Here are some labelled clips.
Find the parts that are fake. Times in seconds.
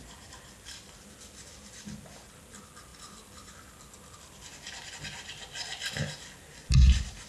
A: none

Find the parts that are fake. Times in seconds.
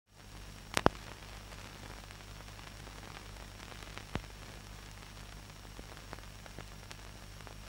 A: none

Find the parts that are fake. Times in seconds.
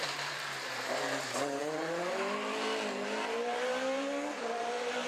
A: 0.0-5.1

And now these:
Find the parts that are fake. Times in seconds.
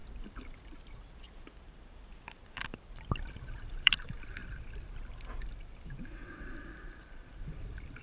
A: 0.0-8.0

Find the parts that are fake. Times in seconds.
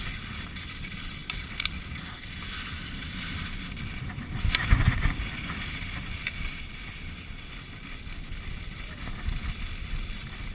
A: none